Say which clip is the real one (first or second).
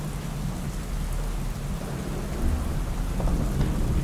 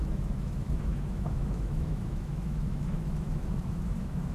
first